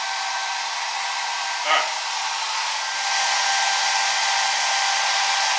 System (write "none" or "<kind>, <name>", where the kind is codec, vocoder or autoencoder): none